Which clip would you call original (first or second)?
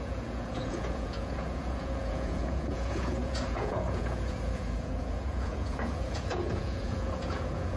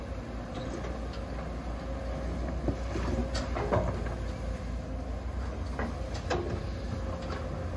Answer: second